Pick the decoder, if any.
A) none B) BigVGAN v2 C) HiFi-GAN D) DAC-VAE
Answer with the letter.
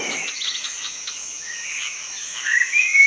D